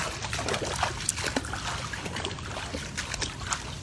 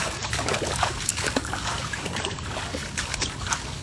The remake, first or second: second